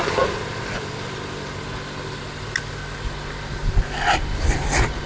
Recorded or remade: recorded